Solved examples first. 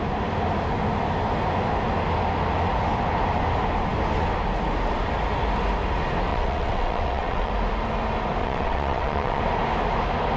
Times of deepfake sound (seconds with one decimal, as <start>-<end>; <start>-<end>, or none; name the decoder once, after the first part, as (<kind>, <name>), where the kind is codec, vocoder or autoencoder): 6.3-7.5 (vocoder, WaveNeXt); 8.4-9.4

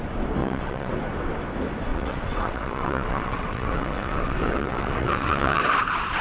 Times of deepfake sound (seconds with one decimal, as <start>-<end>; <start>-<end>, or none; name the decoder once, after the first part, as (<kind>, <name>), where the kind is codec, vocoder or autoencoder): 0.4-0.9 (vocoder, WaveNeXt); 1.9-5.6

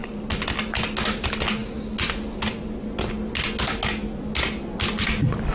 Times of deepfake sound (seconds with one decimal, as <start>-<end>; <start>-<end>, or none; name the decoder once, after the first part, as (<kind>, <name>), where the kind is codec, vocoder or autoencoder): none

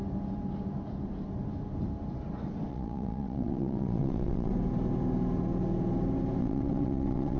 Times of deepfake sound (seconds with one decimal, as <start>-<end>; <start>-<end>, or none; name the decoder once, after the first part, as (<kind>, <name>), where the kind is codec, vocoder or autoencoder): 2.7-4.5 (vocoder, WaveNeXt); 6.4-7.4